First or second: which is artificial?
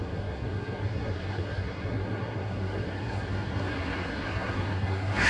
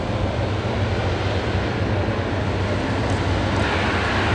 first